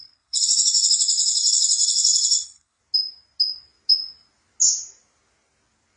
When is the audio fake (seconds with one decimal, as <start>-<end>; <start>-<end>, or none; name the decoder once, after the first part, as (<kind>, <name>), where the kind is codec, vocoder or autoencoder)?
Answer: 0.0-2.8 (codec, HILCodec)